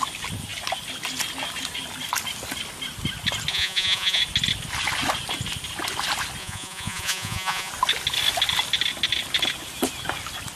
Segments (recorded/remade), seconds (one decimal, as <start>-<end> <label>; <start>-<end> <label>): 0.0-3.5 recorded; 3.5-4.2 remade; 4.2-6.4 recorded; 6.4-7.7 remade; 7.7-10.6 recorded

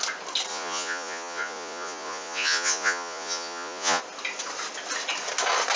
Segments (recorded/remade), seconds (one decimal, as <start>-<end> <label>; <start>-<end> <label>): 0.0-0.5 recorded; 0.5-4.0 remade; 4.0-5.8 recorded

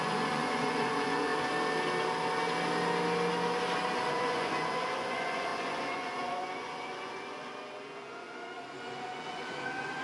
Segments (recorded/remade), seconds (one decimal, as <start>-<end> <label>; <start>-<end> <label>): 0.0-1.3 remade; 1.3-4.1 recorded; 4.1-10.0 remade

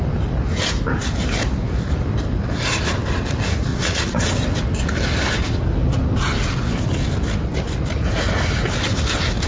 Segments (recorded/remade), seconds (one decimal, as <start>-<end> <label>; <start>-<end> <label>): 0.0-3.7 recorded; 3.7-4.3 remade; 4.3-9.5 recorded

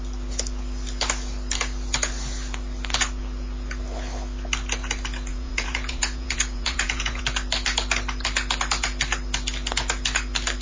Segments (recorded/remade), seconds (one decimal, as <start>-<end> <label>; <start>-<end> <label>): 0.0-5.3 recorded; 5.3-7.2 remade; 7.2-10.6 recorded

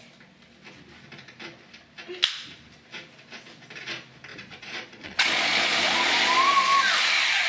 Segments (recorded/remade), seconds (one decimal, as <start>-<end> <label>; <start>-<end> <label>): 0.0-4.3 recorded; 4.3-6.9 remade; 6.9-7.5 recorded